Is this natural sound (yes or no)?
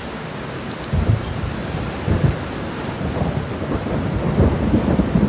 yes